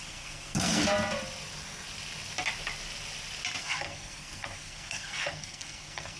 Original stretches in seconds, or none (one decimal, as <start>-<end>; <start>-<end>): 0.8-3.6